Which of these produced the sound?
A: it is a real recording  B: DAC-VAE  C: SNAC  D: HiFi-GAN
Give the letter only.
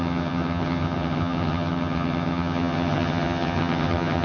D